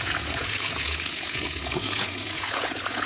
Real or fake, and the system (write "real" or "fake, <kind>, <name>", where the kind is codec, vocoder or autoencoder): fake, vocoder, Vocos